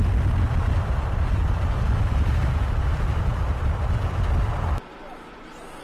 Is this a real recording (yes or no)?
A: yes